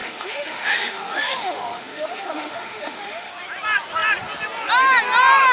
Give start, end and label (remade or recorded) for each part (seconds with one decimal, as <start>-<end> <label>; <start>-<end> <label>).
0.0-3.3 remade; 3.3-5.5 recorded